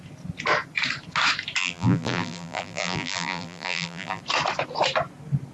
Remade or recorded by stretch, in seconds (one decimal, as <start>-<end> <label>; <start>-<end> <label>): 0.0-1.6 recorded; 1.6-4.2 remade; 4.2-5.5 recorded